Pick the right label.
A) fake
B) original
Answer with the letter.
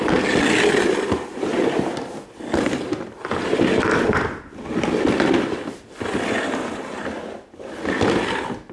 B